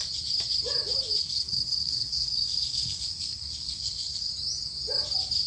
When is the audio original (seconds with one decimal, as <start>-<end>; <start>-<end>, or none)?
0.0-1.2; 4.3-5.5

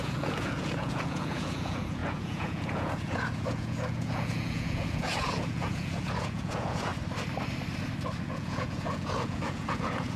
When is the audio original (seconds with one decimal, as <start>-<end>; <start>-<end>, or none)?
6.9-8.2

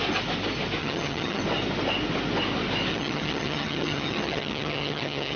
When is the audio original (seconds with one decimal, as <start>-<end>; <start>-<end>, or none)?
0.0-0.8; 1.4-2.9

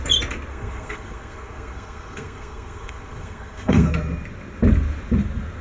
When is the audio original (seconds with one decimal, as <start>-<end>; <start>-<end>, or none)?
0.0-0.5; 3.9-5.6

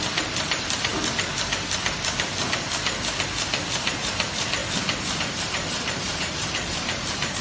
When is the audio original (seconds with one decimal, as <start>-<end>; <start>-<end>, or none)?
0.9-4.0; 4.6-5.2

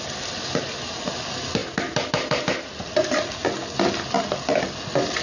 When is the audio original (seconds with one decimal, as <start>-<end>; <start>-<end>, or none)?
0.0-5.2

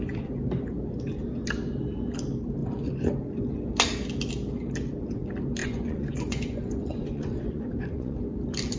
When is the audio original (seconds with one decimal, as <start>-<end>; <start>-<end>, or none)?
0.0-5.6; 8.2-8.8

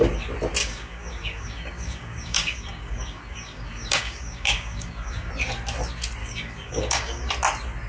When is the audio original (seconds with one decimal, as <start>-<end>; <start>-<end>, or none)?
0.0-0.6; 5.3-6.2; 7.3-7.9